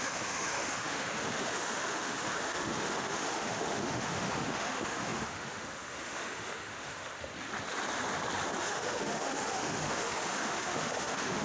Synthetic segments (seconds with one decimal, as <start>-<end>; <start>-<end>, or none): 0.0-7.3; 8.6-11.4

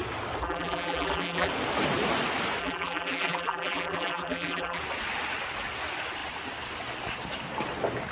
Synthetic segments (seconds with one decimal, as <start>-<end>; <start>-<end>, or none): 0.4-1.5; 2.6-4.8

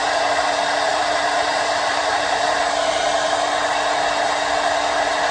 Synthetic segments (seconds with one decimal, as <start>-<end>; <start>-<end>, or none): 0.9-3.0

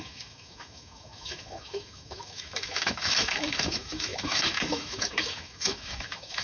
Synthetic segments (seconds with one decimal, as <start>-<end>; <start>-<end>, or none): 0.0-6.4

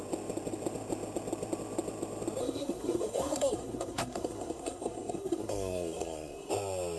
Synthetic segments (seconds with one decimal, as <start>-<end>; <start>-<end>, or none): 2.4-6.5